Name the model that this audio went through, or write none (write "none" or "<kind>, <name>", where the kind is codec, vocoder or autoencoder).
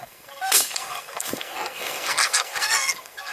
codec, SNAC